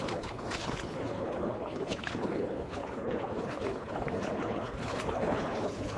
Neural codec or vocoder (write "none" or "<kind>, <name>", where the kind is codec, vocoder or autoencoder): codec, HILCodec